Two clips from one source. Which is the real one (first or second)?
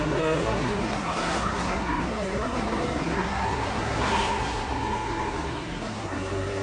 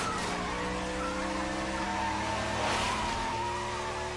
second